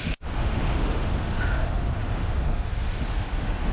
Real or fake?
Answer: fake